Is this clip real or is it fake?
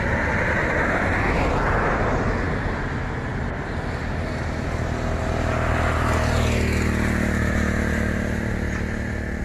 real